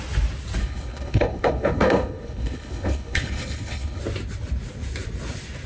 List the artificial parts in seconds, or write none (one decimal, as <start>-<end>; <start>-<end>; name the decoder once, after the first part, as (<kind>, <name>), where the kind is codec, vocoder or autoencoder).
0.6-4.0 (codec, HILCodec)